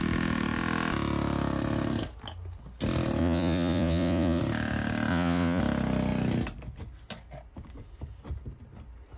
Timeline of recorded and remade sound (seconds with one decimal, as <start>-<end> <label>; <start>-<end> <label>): 0.0-3.2 recorded; 3.2-4.4 remade; 4.4-5.1 recorded; 5.1-5.6 remade; 5.6-9.2 recorded